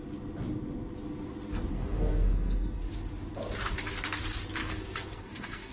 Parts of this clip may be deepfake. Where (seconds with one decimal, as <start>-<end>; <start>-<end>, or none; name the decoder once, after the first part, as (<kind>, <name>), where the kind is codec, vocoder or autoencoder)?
1.7-2.9 (codec, SNAC); 4.6-5.7